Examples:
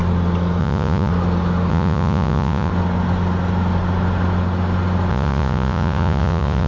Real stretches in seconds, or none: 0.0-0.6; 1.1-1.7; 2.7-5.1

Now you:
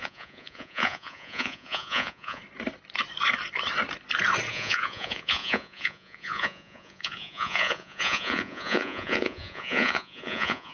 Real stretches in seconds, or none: 2.4-4.5

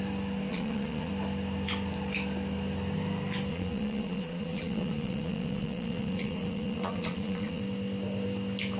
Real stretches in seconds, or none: 0.0-0.5; 1.1-3.5; 7.6-8.8

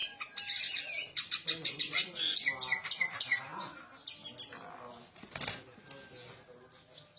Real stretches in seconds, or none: 0.0-1.0; 2.5-7.2

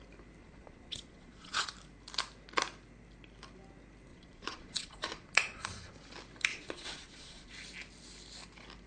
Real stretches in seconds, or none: 0.0-0.4; 1.7-4.1; 5.9-6.5; 7.5-8.9

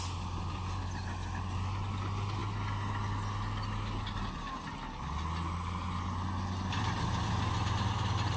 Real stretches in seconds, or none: 0.0-8.4

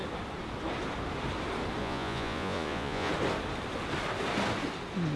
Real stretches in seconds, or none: 0.0-1.8; 3.1-5.2

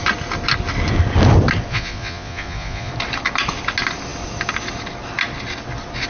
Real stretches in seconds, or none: 0.0-1.7; 2.9-6.1